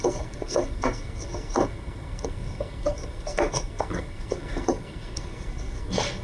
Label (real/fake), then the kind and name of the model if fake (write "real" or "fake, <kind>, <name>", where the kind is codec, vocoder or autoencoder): fake, codec, SNAC